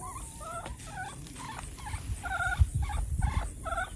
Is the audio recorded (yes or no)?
yes